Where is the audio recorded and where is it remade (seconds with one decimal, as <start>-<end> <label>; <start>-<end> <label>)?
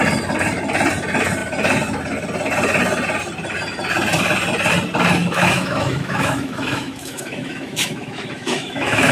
0.0-5.2 recorded; 5.2-9.1 remade